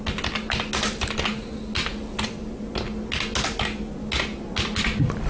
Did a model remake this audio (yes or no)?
no